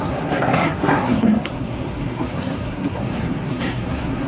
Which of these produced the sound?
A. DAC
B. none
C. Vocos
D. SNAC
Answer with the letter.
D